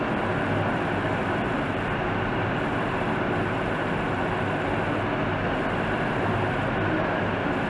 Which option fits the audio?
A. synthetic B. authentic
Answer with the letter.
B